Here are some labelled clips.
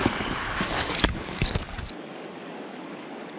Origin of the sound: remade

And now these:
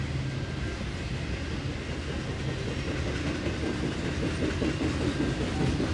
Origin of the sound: recorded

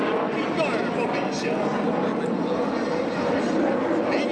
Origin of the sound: recorded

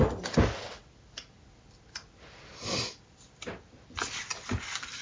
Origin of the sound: recorded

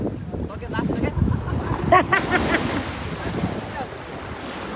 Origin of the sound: recorded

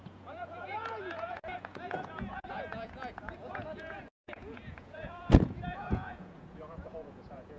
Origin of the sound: remade